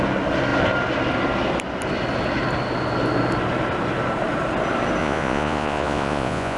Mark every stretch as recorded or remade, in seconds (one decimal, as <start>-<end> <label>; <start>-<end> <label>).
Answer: 0.0-5.0 recorded; 5.0-6.6 remade